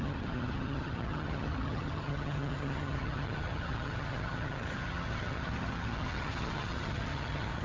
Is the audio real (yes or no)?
no